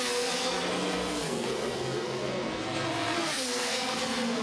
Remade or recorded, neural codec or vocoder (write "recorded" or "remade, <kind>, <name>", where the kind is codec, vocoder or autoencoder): remade, codec, SNAC